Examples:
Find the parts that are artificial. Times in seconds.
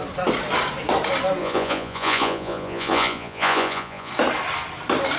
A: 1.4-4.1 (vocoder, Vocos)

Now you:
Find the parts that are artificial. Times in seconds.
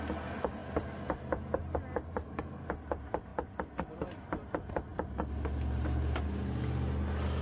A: none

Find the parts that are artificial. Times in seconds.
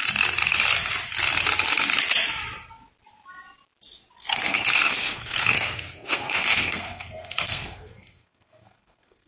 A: 4.2-9.3 (codec, SNAC)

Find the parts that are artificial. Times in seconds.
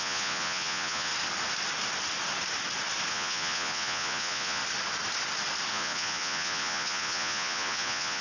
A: 0.0-1.1 (vocoder, Vocos); 3.1-4.6; 5.7-8.2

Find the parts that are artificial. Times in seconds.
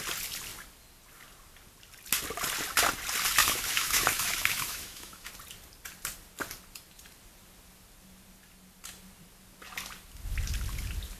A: 3.4-5.3 (autoencoder, DAC-VAE)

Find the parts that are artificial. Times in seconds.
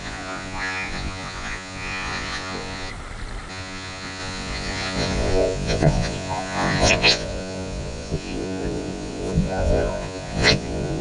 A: 0.0-2.9 (vocoder, Vocos); 3.5-11.0